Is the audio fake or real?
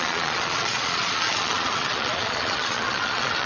fake